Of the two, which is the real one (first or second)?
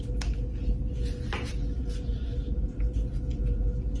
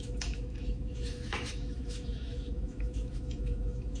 first